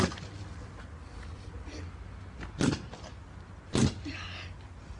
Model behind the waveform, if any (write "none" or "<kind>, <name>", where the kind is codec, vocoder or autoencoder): none